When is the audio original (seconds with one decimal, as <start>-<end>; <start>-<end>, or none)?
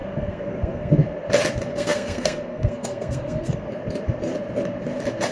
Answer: 0.9-1.7; 3.7-5.3